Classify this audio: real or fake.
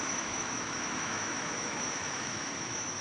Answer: fake